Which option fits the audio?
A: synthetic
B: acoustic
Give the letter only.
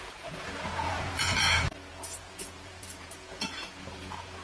A